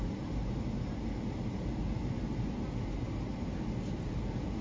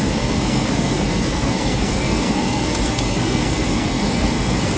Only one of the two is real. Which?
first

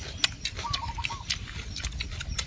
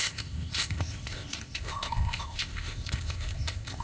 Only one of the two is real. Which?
first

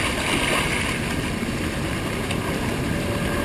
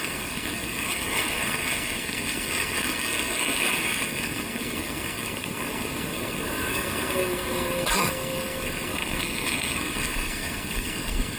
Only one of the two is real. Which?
first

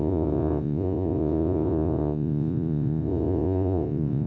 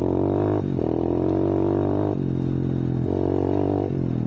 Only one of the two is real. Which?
second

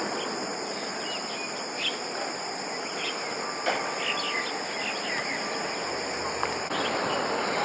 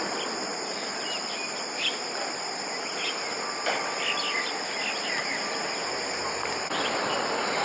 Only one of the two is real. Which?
first